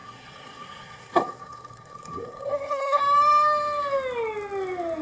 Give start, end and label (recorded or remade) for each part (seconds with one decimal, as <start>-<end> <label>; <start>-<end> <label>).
0.0-3.0 remade; 3.0-5.0 recorded